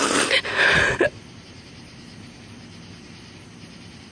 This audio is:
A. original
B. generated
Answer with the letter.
A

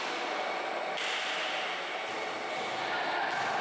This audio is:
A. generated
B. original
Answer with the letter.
B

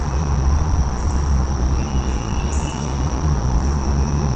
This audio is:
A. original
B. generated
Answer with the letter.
B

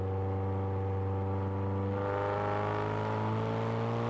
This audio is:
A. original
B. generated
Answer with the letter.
A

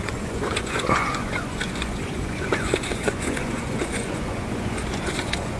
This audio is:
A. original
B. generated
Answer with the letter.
B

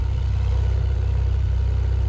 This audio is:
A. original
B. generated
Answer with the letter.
A